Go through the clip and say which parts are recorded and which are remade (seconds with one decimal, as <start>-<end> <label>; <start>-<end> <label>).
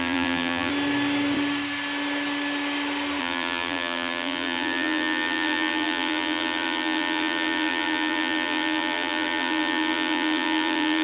0.0-0.7 remade; 0.7-3.2 recorded; 3.2-11.0 remade